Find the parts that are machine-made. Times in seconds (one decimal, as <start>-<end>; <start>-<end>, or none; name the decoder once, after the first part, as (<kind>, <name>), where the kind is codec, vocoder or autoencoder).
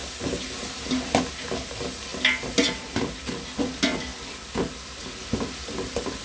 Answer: none